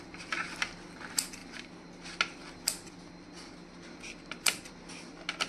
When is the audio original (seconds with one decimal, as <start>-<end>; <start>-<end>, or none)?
0.0-5.5